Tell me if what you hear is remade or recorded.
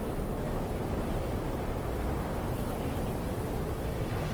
recorded